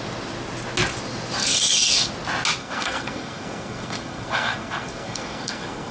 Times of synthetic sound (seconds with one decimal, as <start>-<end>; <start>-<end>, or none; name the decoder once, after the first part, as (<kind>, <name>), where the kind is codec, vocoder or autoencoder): 1.4-2.1 (codec, SNAC); 2.6-5.9